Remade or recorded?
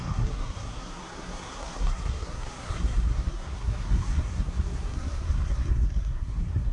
remade